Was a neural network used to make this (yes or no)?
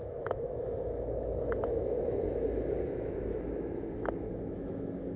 yes